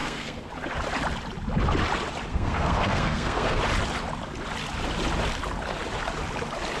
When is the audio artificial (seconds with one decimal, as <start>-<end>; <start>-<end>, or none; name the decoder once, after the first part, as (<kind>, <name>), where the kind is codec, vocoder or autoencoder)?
0.0-0.5 (codec, SNAC); 2.3-3.6